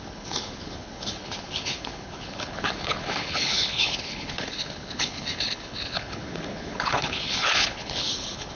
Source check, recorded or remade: remade